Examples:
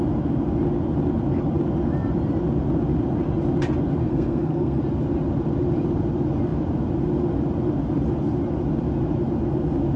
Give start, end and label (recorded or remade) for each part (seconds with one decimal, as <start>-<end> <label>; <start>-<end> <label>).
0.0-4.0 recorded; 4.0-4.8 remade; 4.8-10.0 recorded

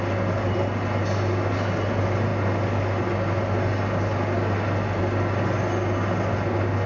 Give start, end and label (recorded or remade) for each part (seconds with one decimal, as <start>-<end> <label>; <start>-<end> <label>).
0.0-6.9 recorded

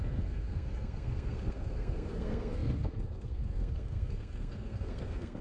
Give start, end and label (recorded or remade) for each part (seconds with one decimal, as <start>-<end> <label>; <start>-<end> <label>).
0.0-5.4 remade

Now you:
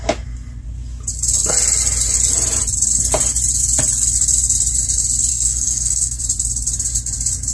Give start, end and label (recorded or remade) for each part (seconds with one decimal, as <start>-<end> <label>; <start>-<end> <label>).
0.0-5.3 recorded; 5.3-6.2 remade; 6.2-7.5 recorded

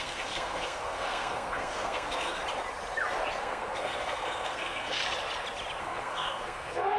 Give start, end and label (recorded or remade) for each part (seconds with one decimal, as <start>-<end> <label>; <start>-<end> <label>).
0.0-2.4 remade; 2.4-3.4 recorded; 3.4-5.0 remade; 5.0-5.8 recorded; 5.8-7.0 remade

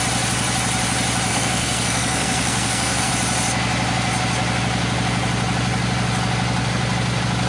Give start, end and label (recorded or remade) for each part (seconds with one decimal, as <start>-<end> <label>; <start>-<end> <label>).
0.0-1.3 recorded; 1.3-3.1 remade; 3.1-7.5 recorded

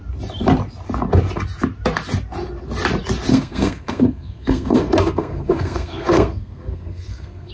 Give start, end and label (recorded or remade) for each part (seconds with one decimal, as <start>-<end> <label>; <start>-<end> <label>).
0.0-3.3 recorded; 3.3-7.5 remade

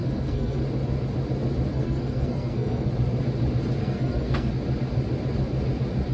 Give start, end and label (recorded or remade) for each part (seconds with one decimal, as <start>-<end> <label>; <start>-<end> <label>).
0.0-0.6 remade; 0.6-1.7 recorded; 1.7-2.9 remade; 2.9-3.8 recorded; 3.8-4.5 remade; 4.5-6.1 recorded